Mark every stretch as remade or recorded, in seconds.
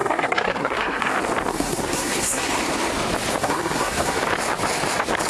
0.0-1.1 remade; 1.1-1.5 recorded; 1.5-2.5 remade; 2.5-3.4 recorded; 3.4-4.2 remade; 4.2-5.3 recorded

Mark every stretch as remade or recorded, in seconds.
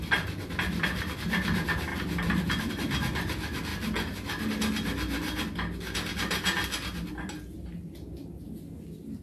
0.0-9.2 recorded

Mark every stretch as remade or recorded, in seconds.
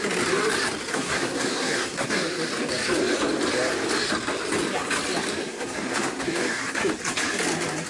0.0-0.9 recorded; 0.9-2.2 remade; 2.2-5.4 recorded; 5.4-6.9 remade; 6.9-7.9 recorded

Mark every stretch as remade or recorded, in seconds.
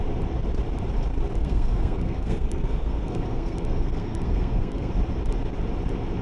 0.0-1.4 recorded; 1.4-4.9 remade; 4.9-6.2 recorded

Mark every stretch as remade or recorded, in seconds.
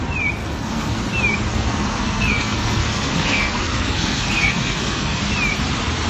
0.0-0.4 recorded; 0.4-1.0 remade; 1.0-1.5 recorded; 1.5-5.2 remade; 5.2-6.1 recorded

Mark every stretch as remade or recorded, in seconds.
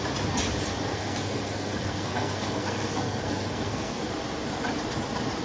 0.0-0.9 recorded; 0.9-4.1 remade; 4.1-5.4 recorded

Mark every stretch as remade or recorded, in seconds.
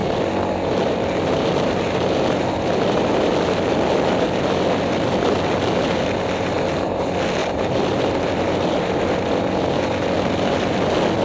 0.0-11.2 recorded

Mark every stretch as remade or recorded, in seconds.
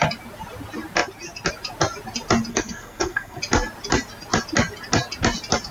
0.0-2.5 recorded; 2.5-3.4 remade; 3.4-5.7 recorded